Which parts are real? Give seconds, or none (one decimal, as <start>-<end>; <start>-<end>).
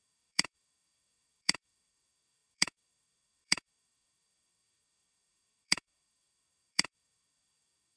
none